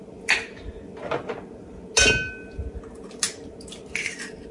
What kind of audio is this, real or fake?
real